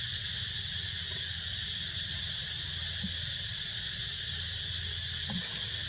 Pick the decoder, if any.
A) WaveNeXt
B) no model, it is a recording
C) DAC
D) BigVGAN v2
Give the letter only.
B